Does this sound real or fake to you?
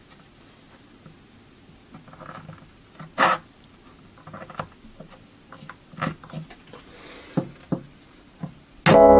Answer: real